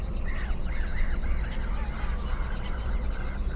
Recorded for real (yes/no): yes